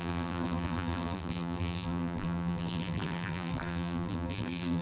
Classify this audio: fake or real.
fake